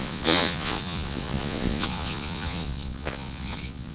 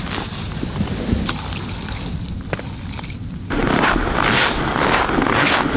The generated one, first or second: first